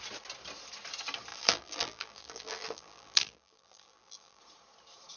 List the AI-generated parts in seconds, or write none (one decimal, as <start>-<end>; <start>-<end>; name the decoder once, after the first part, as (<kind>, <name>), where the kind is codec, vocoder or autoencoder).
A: 1.3-4.4 (vocoder, BigVGAN v2)